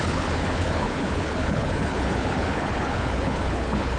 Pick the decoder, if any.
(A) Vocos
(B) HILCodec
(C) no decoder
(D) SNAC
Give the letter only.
B